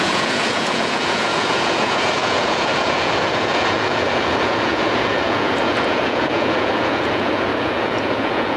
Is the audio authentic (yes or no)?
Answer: no